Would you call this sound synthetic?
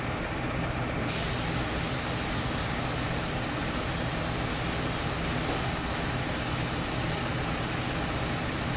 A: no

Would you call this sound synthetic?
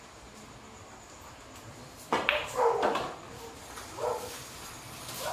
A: no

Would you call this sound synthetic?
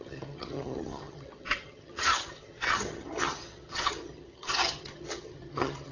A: yes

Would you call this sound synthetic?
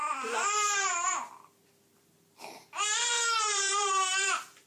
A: yes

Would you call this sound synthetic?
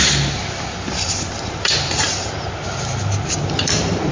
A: no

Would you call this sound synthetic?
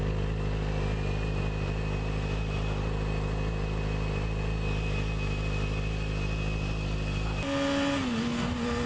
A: no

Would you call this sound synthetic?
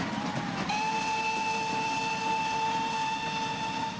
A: no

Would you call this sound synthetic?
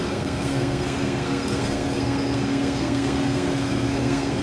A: yes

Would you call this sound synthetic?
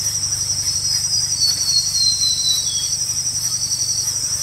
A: no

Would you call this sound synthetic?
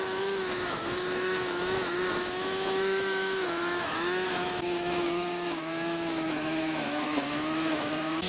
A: yes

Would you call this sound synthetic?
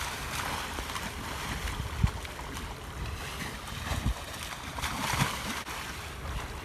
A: no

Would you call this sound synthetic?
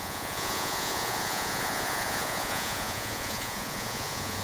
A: yes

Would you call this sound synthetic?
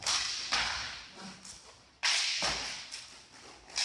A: no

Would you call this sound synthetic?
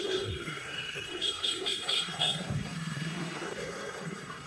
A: yes